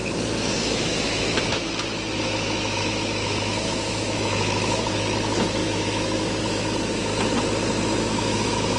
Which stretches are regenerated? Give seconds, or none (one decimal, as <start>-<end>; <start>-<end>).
0.0-7.1; 8.0-8.8